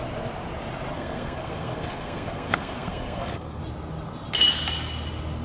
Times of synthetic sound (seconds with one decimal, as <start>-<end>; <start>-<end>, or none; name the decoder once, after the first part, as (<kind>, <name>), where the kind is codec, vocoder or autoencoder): 0.9-3.6 (codec, SNAC)